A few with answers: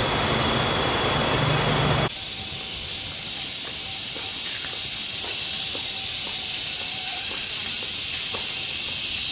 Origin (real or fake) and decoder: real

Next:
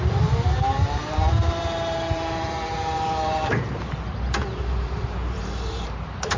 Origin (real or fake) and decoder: fake, vocoder, BigVGAN v2